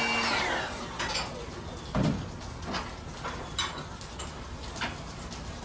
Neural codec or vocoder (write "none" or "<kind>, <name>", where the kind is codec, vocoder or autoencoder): none